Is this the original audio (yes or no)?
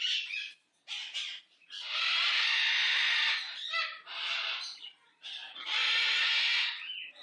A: yes